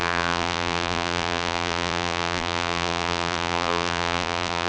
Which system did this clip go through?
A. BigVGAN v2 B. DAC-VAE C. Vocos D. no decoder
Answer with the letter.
A